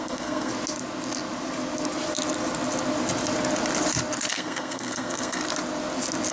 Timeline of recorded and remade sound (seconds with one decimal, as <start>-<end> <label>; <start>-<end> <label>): 0.0-0.5 remade; 0.5-4.3 recorded; 4.3-5.4 remade; 5.4-6.3 recorded